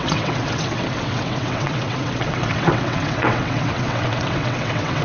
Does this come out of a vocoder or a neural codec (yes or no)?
yes